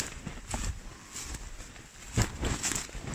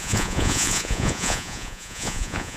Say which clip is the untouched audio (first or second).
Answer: first